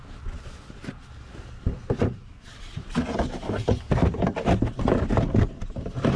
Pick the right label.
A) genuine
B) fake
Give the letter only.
A